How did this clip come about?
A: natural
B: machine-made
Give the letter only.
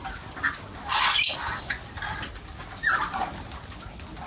A